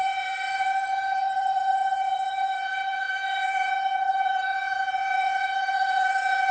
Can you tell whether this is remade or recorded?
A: remade